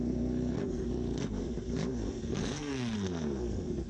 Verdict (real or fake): fake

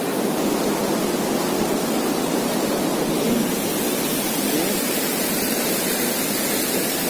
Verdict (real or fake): real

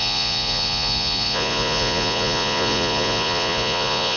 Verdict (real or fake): fake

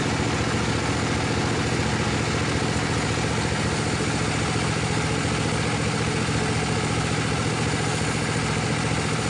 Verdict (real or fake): real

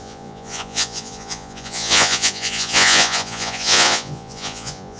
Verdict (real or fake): fake